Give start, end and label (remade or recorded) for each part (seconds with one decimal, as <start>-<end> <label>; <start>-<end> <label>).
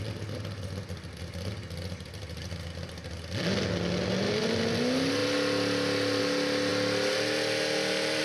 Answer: 0.0-8.2 recorded